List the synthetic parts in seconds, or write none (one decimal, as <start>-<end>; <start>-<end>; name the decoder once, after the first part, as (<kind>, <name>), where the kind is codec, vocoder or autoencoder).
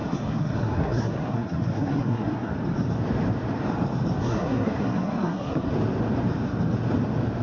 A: 0.0-2.5 (codec, SNAC); 4.2-5.7